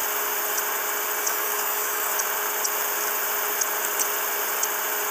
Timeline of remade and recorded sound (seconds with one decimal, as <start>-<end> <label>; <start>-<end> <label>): 0.0-1.2 recorded; 1.2-2.1 remade; 2.1-5.1 recorded